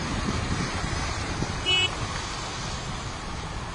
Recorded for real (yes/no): no